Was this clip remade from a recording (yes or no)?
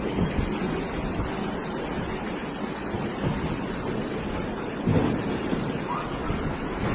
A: no